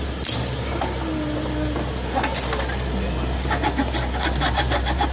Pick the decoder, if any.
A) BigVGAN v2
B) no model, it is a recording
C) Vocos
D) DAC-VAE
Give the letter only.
B